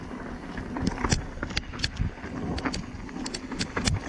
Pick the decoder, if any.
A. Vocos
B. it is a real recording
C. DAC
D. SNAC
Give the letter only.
B